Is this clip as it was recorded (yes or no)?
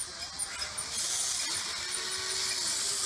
yes